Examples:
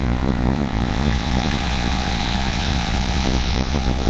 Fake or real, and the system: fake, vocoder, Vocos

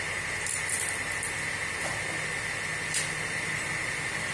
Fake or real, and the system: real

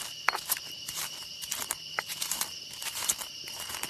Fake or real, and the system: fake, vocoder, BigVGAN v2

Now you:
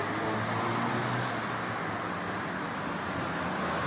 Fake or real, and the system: real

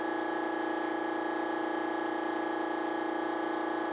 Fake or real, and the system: real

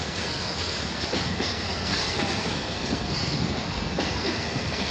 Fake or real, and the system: fake, codec, SNAC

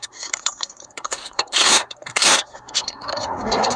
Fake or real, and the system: fake, codec, SNAC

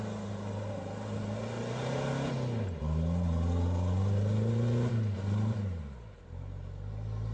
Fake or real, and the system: real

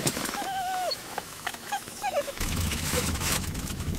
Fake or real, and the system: fake, autoencoder, DAC-VAE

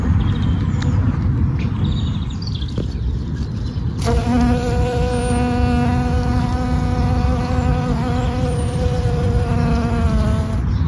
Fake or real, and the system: real